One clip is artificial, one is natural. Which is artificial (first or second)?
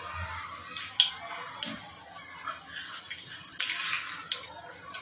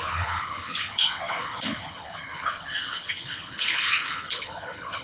second